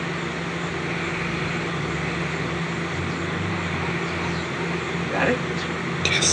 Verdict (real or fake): real